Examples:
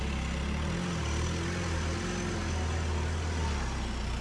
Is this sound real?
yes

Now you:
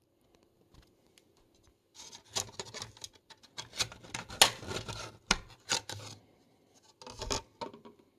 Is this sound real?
yes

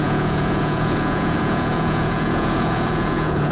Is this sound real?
no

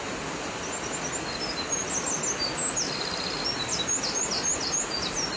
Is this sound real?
yes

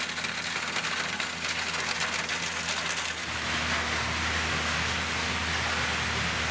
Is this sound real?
yes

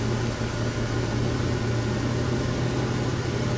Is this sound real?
yes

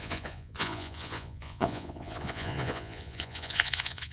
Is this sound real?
no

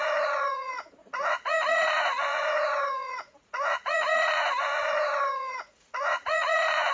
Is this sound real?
no